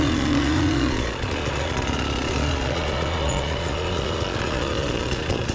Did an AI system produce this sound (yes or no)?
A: yes